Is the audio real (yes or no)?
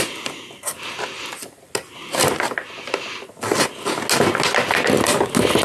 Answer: yes